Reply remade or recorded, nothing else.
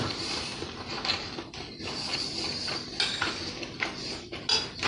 recorded